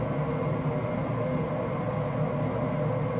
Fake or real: real